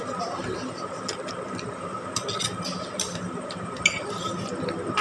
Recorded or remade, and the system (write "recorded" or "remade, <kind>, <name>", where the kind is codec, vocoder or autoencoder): recorded